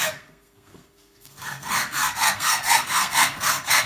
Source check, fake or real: fake